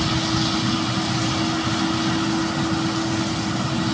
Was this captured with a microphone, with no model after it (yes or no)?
yes